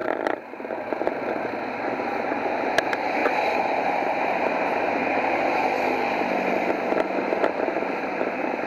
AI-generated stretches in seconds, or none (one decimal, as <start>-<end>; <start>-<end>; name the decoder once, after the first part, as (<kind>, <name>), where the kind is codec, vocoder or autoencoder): 0.0-0.6 (vocoder, BigVGAN v2); 5.6-6.7